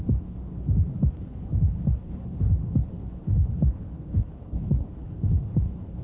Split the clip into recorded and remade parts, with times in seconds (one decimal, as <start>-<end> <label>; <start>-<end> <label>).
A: 0.0-0.5 remade; 0.5-1.1 recorded; 1.1-6.0 remade